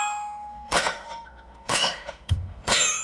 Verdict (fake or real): fake